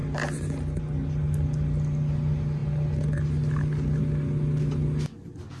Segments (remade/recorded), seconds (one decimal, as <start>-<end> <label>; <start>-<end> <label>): 0.0-5.6 recorded